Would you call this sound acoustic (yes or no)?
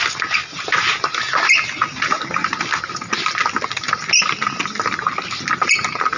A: yes